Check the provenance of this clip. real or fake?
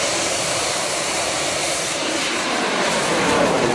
fake